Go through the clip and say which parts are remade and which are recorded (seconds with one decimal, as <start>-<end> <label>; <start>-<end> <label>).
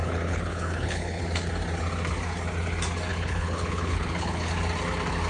0.0-1.2 remade; 1.2-3.1 recorded; 3.1-4.5 remade; 4.5-5.3 recorded